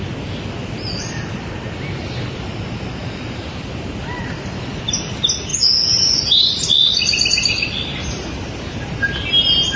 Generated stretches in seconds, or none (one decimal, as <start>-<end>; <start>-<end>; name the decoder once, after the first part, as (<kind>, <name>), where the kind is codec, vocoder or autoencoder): 3.0-4.7 (vocoder, BigVGAN v2)